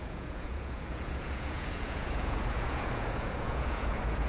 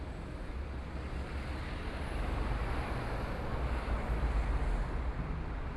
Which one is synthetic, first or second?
first